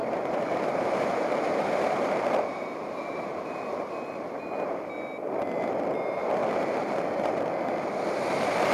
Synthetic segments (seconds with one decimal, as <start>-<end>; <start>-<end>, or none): 0.0-3.5